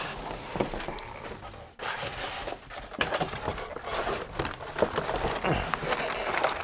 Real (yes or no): yes